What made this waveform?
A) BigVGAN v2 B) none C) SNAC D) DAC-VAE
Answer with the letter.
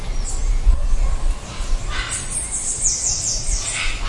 B